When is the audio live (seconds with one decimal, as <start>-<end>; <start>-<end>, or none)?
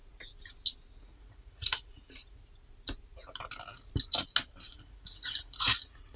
0.0-1.0; 2.4-4.7